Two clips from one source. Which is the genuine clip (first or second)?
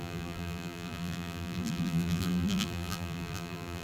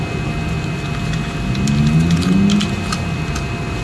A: second